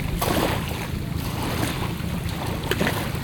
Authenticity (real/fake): real